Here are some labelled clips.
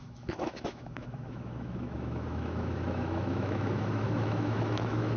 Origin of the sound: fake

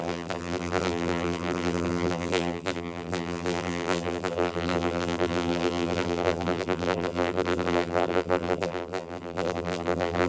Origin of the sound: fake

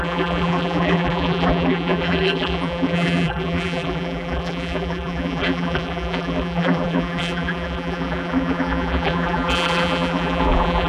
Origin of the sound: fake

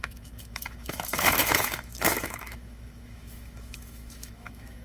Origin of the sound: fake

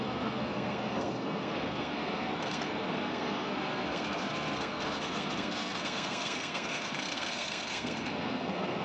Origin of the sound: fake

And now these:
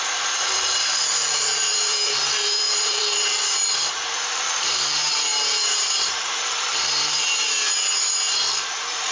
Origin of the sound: fake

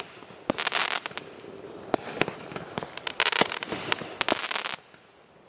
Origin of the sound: real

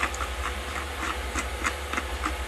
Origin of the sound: real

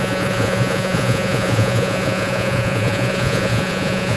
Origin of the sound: fake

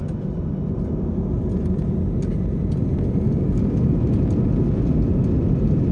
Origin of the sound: real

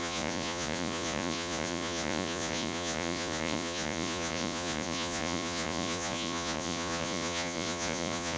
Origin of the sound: fake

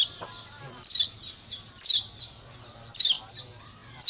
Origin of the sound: real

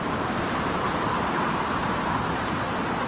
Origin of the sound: fake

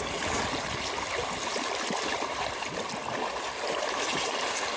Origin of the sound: real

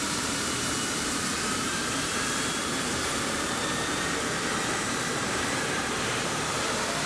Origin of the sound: fake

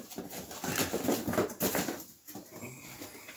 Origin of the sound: real